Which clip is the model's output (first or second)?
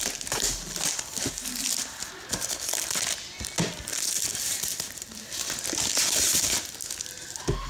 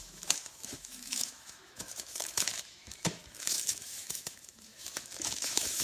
second